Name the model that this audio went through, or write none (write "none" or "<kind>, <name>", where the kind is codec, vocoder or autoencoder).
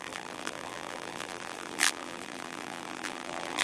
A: vocoder, BigVGAN v2